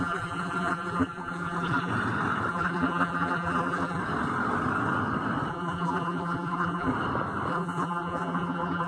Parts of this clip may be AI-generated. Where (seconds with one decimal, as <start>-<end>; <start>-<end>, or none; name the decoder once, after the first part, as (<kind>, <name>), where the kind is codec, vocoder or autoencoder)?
0.0-1.9 (vocoder, BigVGAN v2); 2.5-4.0; 5.5-6.9; 7.5-8.9